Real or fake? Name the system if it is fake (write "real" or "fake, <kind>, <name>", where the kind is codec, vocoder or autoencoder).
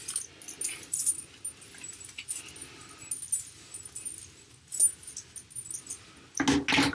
real